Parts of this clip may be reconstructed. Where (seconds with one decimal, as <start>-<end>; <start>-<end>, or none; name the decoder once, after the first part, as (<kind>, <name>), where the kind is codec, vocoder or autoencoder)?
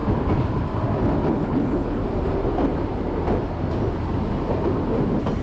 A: 1.3-2.0 (codec, HILCodec)